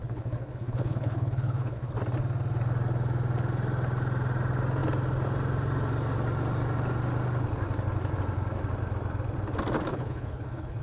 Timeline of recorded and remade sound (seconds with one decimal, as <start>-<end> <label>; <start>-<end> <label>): 0.0-1.9 remade; 1.9-9.9 recorded; 9.9-10.8 remade